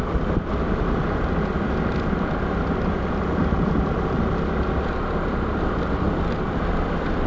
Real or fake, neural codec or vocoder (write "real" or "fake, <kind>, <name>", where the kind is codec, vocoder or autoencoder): real